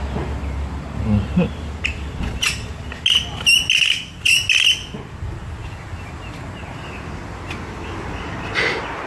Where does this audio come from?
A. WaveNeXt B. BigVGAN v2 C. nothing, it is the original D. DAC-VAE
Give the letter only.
C